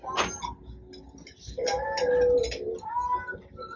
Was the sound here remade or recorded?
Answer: recorded